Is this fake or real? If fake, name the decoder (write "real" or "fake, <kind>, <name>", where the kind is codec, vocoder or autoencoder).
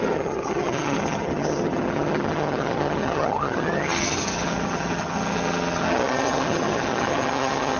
fake, vocoder, HiFi-GAN